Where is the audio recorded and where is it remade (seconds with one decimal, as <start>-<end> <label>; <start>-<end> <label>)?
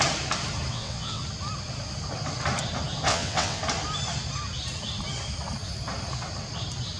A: 0.0-0.7 recorded; 0.7-1.2 remade; 1.2-3.1 recorded; 3.1-3.6 remade; 3.6-7.0 recorded